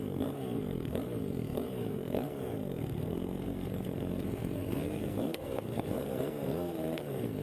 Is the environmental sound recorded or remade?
remade